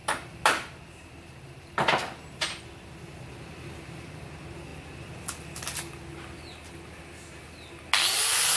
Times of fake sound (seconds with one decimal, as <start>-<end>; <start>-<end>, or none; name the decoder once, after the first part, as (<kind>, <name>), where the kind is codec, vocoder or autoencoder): 0.0-2.6 (vocoder, BigVGAN v2)